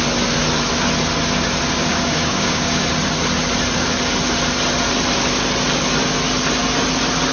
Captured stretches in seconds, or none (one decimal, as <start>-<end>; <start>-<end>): 0.0-1.9; 2.8-7.3